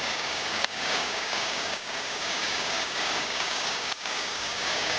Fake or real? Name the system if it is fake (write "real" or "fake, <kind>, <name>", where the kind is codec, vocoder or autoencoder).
fake, codec, DAC